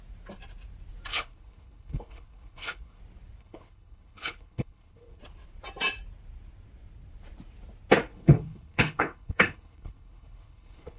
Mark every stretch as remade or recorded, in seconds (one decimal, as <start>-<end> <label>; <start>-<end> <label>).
0.0-1.1 recorded; 1.1-3.0 remade; 3.0-3.4 recorded; 3.4-5.2 remade; 5.2-8.1 recorded; 8.1-11.0 remade

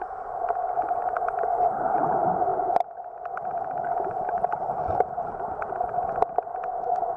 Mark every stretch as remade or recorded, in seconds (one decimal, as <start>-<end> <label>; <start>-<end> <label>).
0.0-7.2 recorded

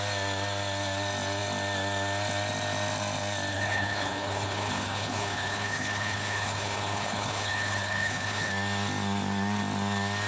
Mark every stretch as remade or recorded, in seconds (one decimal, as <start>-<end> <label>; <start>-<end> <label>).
0.0-3.5 recorded; 3.5-8.5 remade; 8.5-10.3 recorded

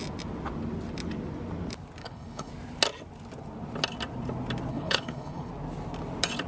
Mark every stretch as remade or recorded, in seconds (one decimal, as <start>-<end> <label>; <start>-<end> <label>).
0.0-2.0 recorded; 2.0-2.5 remade; 2.5-4.7 recorded; 4.7-5.5 remade; 5.5-6.5 recorded